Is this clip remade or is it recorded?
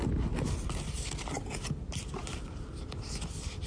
recorded